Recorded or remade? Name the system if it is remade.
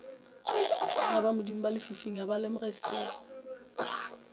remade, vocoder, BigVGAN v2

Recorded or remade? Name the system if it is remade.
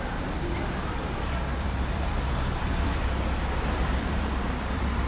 remade, vocoder, BigVGAN v2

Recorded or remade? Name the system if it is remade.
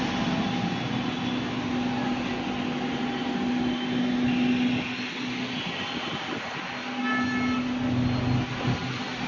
recorded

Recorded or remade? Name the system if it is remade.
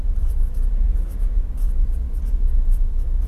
recorded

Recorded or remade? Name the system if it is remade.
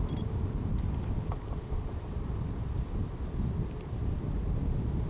remade, vocoder, BigVGAN v2